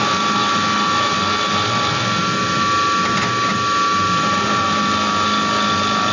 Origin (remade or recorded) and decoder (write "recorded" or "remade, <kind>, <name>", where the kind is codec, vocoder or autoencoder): recorded